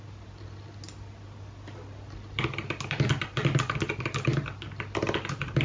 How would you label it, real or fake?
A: fake